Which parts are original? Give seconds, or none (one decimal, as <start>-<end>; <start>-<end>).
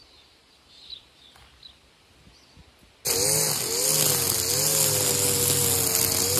2.6-6.4